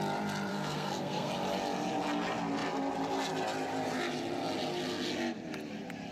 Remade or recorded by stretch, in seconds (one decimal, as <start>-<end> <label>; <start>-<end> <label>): 0.0-0.5 recorded; 0.5-1.3 remade; 1.3-6.1 recorded